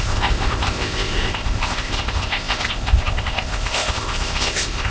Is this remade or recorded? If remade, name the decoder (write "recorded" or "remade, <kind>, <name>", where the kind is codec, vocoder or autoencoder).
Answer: remade, codec, ZipCodec